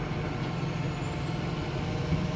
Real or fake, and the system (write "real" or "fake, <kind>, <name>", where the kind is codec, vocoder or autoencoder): real